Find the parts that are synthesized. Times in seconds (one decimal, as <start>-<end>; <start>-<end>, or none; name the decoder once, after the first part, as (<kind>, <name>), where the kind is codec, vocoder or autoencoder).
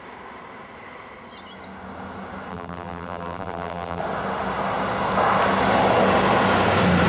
2.5-4.0 (vocoder, BigVGAN v2)